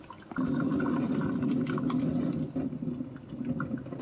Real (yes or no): yes